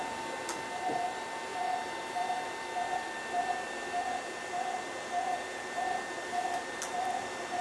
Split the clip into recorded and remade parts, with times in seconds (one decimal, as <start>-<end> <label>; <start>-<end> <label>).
0.0-7.6 recorded